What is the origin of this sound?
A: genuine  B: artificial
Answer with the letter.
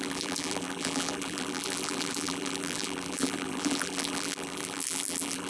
B